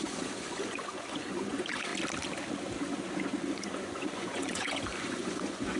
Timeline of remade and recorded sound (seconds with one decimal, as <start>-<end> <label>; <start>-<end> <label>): 0.0-1.9 remade; 1.9-3.4 recorded; 3.4-5.8 remade